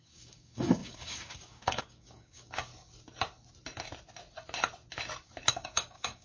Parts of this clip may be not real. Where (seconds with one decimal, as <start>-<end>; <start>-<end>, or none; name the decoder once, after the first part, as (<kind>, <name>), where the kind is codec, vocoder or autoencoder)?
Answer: 0.0-2.7 (codec, DAC); 5.5-6.2

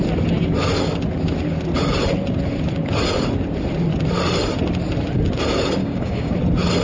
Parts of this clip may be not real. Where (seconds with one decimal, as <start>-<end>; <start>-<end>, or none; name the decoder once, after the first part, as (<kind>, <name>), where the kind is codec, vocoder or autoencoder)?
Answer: 5.8-6.3 (codec, DAC)

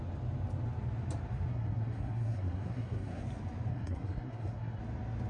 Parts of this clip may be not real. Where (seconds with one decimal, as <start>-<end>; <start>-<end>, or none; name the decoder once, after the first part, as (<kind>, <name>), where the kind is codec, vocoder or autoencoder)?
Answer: 1.5-3.2 (codec, SNAC); 3.7-4.8

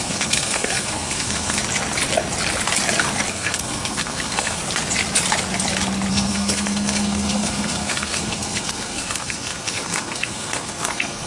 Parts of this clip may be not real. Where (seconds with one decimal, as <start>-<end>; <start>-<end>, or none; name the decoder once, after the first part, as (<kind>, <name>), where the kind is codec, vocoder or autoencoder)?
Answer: 0.0-1.6 (codec, SNAC); 3.3-4.6; 6.1-11.3

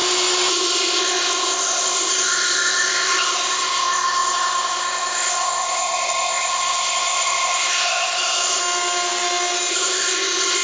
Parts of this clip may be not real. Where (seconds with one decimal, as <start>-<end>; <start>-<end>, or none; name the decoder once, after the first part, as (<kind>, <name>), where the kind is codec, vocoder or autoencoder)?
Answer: 0.5-8.6 (codec, ZipCodec); 9.7-10.6

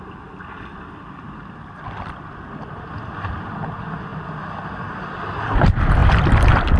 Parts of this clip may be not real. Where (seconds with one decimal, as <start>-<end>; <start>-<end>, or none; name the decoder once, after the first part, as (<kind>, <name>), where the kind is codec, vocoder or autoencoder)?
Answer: none

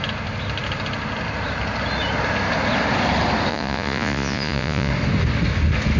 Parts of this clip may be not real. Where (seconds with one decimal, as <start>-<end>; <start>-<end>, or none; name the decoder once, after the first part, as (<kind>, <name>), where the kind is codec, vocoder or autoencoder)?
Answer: 3.5-4.9 (vocoder, Vocos)